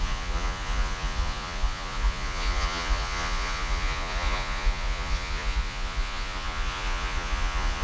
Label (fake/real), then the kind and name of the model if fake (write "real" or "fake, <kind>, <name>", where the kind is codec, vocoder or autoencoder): fake, vocoder, Vocos